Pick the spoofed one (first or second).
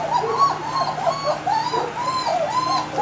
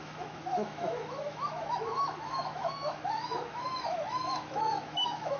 second